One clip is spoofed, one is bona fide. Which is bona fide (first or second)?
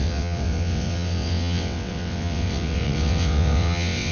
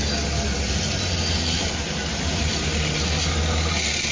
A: second